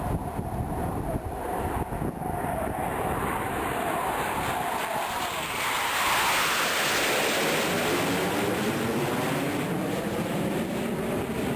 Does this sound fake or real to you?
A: real